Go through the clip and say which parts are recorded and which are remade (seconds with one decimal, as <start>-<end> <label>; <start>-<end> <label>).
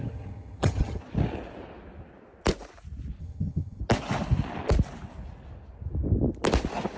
0.0-1.0 remade; 1.0-3.2 recorded; 3.2-3.8 remade; 3.8-7.0 recorded